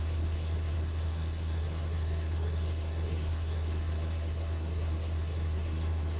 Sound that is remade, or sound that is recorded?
remade